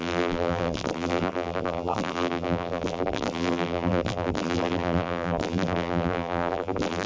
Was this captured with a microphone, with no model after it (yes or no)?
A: no